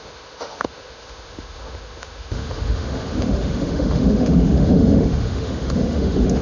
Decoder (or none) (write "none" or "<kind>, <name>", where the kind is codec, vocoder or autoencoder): autoencoder, DAC-VAE